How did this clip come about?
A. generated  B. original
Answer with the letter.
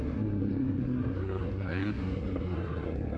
A